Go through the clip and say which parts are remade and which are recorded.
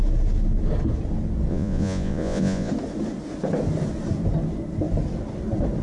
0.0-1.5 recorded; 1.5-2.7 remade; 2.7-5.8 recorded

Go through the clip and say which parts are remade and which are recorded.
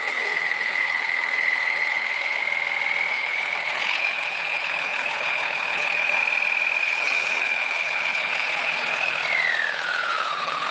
0.0-2.4 remade; 2.4-3.1 recorded; 3.1-6.2 remade; 6.2-6.8 recorded; 6.8-9.2 remade; 9.2-9.7 recorded; 9.7-10.7 remade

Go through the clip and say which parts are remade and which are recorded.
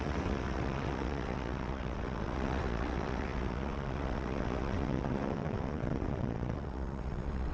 0.0-7.5 remade